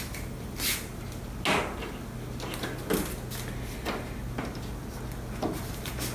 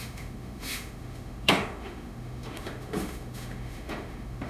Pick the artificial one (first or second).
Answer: second